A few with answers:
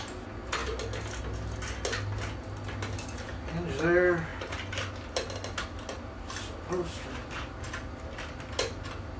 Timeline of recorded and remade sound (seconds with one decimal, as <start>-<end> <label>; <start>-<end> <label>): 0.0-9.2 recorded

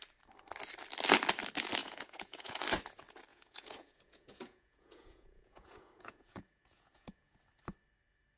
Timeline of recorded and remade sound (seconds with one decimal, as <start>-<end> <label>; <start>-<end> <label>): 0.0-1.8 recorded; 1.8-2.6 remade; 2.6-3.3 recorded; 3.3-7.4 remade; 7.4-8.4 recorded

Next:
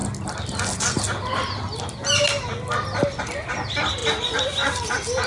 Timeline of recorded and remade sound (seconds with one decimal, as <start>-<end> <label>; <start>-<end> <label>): 0.0-5.3 recorded

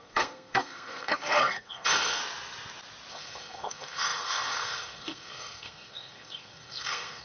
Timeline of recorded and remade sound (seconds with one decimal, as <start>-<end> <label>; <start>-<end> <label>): 0.0-2.2 remade; 2.2-3.1 recorded; 3.1-7.2 remade

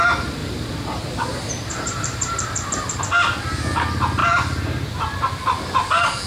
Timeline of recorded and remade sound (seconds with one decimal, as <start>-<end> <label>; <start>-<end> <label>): 0.0-0.4 recorded; 0.4-3.0 remade; 3.0-4.2 recorded; 4.2-5.2 remade; 5.2-6.3 recorded

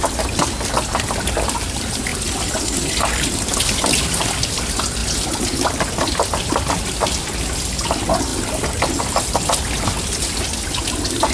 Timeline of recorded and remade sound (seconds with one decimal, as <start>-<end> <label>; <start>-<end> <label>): 0.0-11.3 recorded

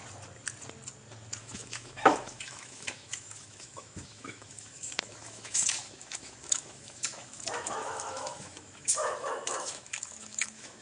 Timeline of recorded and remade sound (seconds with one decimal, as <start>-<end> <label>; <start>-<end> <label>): 0.0-1.4 recorded; 1.4-10.8 remade